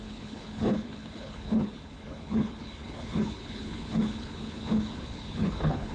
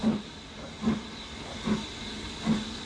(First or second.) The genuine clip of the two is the second